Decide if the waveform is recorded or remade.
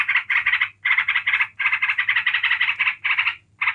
recorded